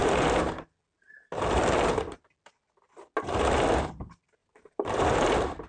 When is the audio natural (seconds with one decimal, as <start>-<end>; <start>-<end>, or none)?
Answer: 0.0-4.4; 5.1-5.7